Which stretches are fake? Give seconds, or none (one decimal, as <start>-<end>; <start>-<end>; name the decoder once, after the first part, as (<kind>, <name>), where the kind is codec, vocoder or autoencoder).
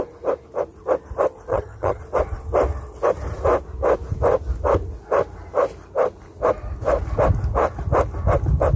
1.5-2.0 (vocoder, HiFi-GAN)